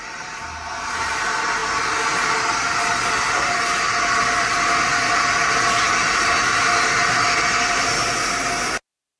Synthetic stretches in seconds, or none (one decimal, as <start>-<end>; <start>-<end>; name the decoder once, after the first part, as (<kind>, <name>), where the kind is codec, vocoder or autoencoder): none